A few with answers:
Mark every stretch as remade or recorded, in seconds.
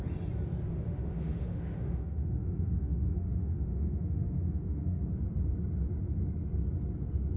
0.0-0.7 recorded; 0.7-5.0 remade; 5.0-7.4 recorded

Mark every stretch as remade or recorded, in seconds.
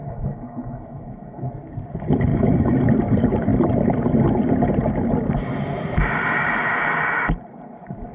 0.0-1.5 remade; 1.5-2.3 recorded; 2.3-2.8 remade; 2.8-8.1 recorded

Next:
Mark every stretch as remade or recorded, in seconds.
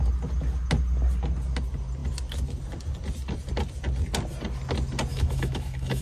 0.0-5.1 recorded; 5.1-6.0 remade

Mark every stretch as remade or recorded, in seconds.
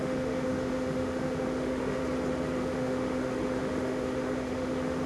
0.0-2.0 remade; 2.0-2.6 recorded; 2.6-5.1 remade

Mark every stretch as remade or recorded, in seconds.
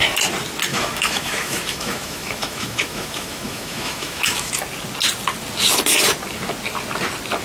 0.0-0.7 recorded; 0.7-4.5 remade; 4.5-7.4 recorded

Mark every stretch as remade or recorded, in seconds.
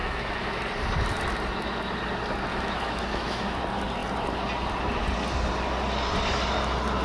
0.0-0.6 remade; 0.6-2.5 recorded; 2.5-3.6 remade; 3.6-7.0 recorded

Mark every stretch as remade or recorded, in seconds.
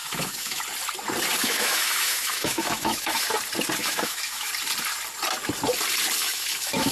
0.0-0.6 remade; 0.6-1.4 recorded; 1.4-3.3 remade; 3.3-3.8 recorded; 3.8-4.5 remade; 4.5-6.2 recorded; 6.2-6.9 remade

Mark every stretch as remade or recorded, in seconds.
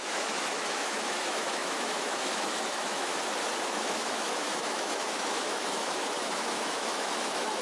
0.0-3.1 remade; 3.1-3.6 recorded; 3.6-7.6 remade